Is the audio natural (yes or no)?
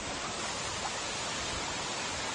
yes